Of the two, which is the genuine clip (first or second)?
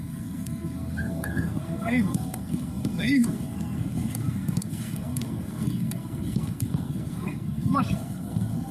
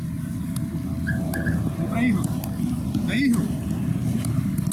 second